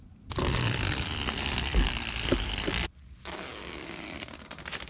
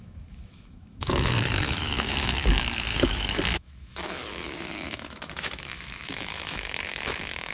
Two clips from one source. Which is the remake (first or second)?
second